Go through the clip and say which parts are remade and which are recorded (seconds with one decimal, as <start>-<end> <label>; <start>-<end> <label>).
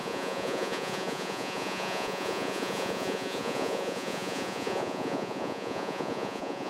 0.0-6.7 remade